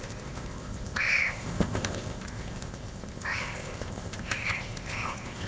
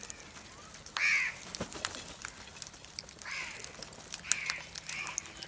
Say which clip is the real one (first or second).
second